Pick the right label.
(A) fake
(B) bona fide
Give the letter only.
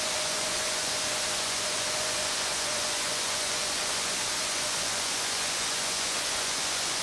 A